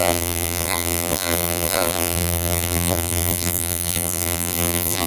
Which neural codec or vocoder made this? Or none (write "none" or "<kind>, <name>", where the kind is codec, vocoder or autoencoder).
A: vocoder, BigVGAN v2